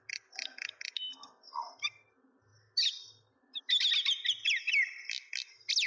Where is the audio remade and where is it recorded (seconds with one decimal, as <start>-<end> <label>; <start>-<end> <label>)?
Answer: 0.0-5.9 recorded